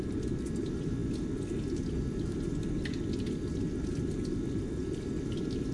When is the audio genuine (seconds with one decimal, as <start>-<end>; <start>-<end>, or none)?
0.0-5.7